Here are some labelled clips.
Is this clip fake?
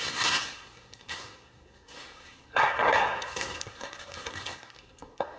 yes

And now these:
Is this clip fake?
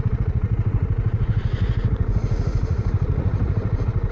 yes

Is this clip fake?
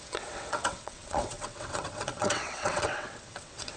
yes